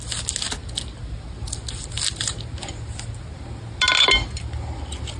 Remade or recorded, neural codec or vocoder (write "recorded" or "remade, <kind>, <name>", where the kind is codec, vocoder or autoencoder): recorded